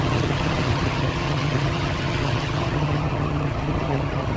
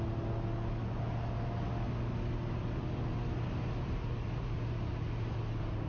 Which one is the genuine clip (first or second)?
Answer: second